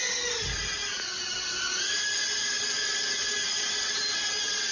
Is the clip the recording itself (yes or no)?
yes